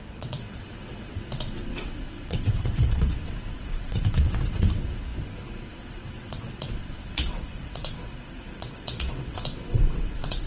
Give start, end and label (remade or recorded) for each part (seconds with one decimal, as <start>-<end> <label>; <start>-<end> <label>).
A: 0.0-5.1 remade; 5.1-5.7 recorded; 5.7-10.5 remade